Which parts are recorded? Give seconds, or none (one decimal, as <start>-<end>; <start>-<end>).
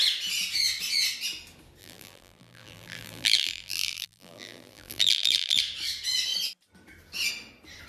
0.0-1.8; 5.6-7.9